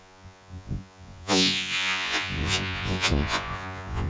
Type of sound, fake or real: fake